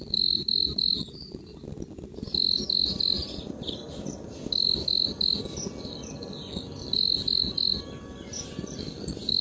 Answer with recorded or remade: recorded